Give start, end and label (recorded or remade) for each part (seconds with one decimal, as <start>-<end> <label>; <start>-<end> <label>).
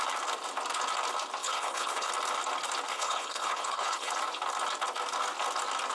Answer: 0.0-1.4 recorded; 1.4-2.1 remade; 2.1-2.9 recorded; 2.9-4.1 remade; 4.1-5.9 recorded